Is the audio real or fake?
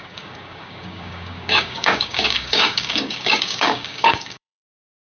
fake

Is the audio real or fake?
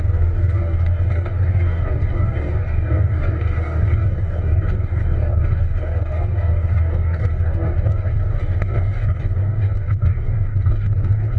fake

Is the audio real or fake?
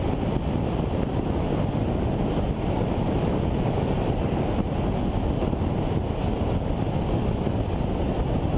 real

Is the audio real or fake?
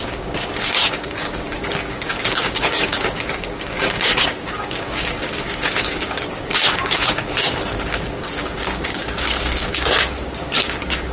fake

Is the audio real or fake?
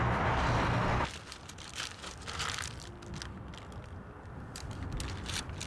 real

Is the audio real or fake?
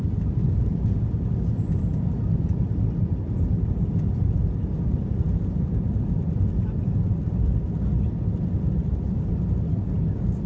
real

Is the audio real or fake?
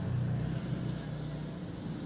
real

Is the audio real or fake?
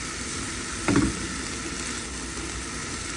real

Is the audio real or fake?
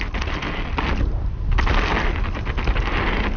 real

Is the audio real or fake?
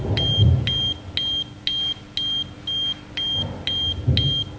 real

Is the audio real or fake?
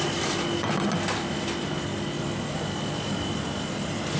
real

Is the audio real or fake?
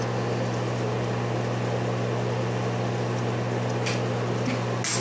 real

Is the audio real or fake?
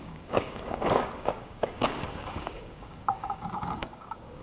fake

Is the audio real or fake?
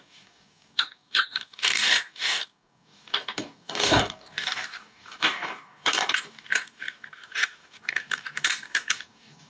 fake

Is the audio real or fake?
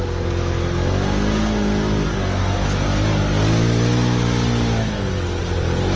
real